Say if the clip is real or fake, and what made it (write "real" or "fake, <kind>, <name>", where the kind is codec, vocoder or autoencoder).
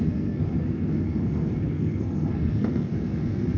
fake, codec, SNAC